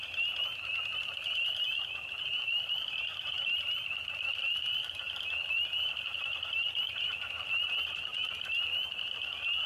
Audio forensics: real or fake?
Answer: real